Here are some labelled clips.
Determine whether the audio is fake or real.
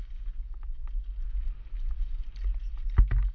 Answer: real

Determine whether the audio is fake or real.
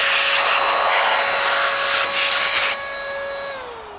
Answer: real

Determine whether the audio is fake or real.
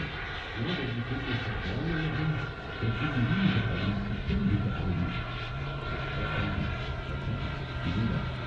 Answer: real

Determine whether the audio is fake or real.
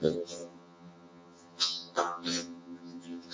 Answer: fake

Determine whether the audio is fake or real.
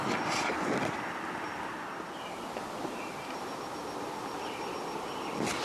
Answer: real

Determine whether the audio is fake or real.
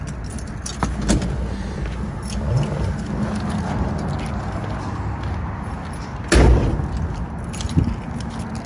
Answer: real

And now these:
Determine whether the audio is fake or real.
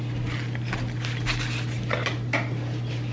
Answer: real